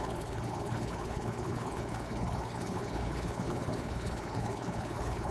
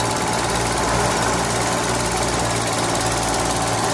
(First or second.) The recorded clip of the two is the second